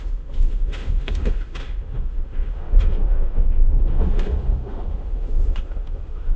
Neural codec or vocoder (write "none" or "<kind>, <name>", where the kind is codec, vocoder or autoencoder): autoencoder, DAC-VAE